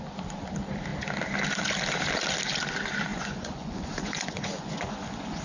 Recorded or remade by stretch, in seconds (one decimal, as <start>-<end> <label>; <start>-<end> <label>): 0.0-3.1 recorded; 3.1-5.4 remade